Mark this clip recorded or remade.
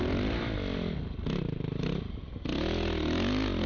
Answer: recorded